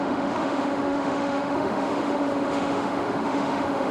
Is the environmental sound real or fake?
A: fake